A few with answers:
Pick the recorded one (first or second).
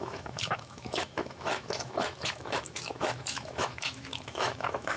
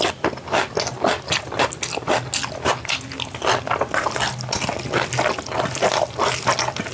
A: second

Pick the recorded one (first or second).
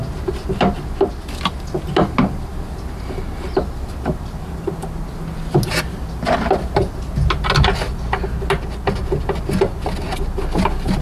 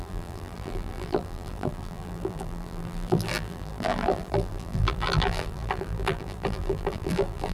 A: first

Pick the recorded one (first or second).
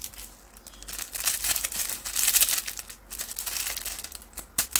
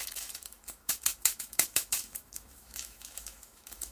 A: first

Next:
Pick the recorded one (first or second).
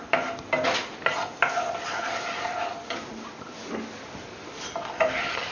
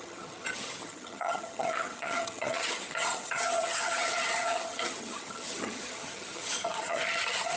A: first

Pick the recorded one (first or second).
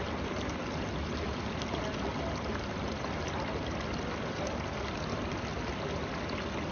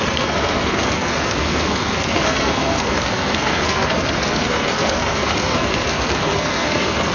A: first